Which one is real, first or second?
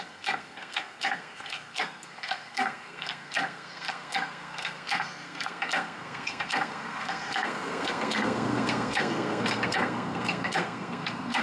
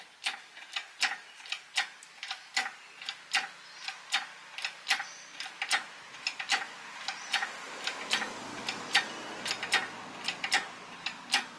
second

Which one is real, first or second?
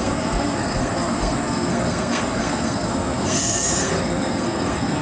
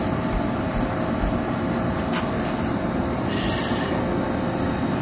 second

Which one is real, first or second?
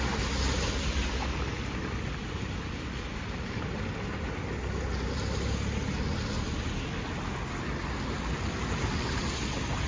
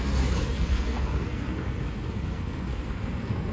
first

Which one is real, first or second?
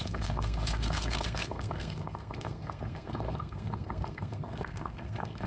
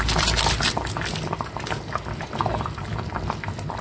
second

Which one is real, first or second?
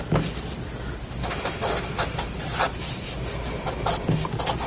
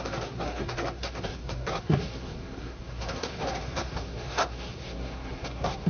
first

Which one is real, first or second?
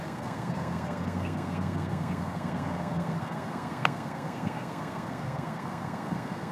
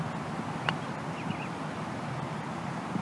second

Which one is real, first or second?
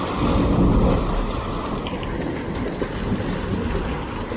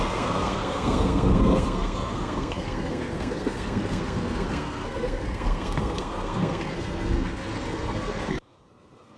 first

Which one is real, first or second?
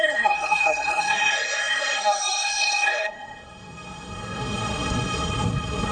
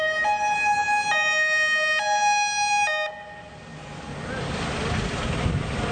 second